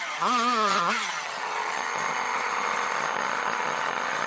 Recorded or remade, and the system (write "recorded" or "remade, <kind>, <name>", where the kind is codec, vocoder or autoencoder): remade, vocoder, HiFi-GAN